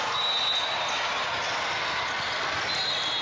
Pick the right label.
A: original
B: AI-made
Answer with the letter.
A